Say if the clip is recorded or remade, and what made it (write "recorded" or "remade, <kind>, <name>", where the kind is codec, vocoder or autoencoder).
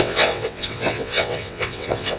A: remade, vocoder, WaveNeXt